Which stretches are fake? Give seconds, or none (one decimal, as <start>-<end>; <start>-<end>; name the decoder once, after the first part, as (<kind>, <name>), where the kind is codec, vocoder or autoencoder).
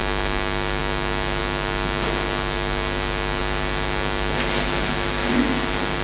none